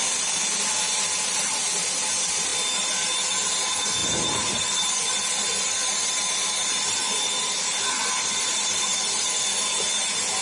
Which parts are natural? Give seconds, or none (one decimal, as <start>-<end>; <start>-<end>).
0.0-4.0; 9.2-10.4